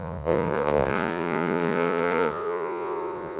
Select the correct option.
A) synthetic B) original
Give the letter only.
A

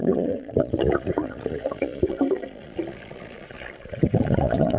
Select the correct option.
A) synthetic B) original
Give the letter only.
A